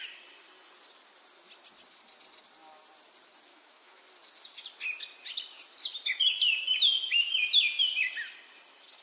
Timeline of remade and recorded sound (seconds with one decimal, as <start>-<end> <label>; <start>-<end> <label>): 0.0-3.5 recorded; 3.5-4.0 remade; 4.0-9.0 recorded